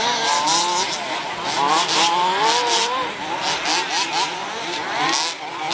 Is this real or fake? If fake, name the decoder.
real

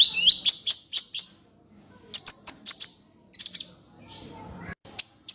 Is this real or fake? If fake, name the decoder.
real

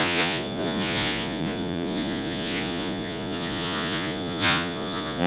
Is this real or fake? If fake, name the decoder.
fake, vocoder, Vocos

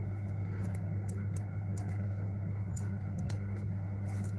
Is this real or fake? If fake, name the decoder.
fake, codec, SNAC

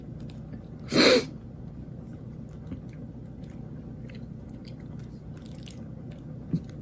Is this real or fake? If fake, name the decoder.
real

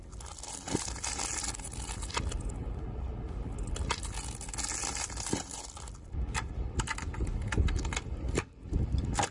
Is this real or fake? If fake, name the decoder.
real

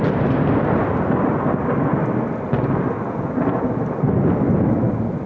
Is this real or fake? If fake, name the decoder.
real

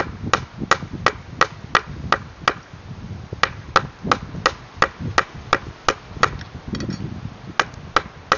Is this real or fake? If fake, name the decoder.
real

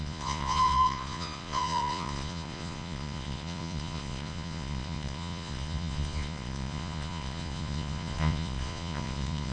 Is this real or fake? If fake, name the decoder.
fake, vocoder, Vocos